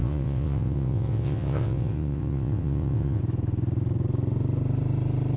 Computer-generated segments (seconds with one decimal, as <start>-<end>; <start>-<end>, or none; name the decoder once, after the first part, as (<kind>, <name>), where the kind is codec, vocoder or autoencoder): 0.0-3.2 (vocoder, WaveNeXt)

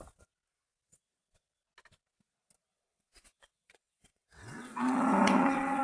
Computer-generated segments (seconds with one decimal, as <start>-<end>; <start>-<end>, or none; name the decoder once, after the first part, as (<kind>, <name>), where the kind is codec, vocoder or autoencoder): 2.7-5.8 (vocoder, WaveNeXt)